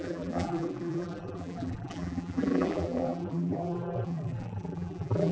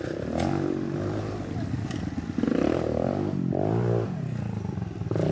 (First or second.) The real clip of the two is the second